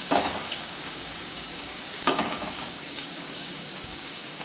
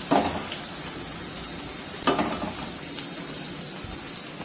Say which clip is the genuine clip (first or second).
second